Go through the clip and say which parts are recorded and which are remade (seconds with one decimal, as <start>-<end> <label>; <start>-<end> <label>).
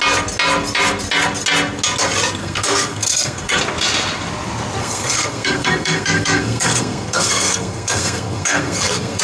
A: 0.0-2.4 recorded; 2.4-3.6 remade; 3.6-4.8 recorded; 4.8-9.2 remade